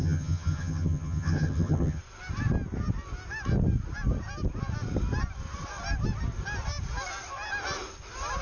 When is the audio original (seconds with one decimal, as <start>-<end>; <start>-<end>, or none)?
2.0-8.4